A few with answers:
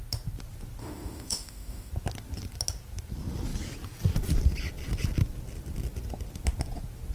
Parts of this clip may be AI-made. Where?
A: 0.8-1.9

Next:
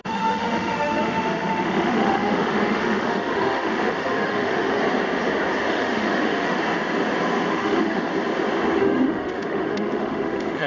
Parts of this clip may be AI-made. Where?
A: 0.0-4.8; 5.7-6.6; 7.5-8.1; 8.8-10.7